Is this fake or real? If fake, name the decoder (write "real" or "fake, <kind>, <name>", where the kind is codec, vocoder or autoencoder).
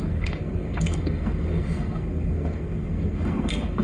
fake, codec, SNAC